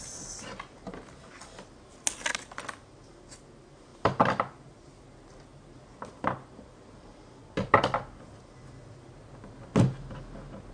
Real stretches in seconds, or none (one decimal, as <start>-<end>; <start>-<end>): 0.0-10.7